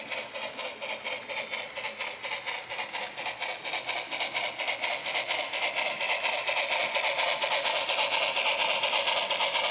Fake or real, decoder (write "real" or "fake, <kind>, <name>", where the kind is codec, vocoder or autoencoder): real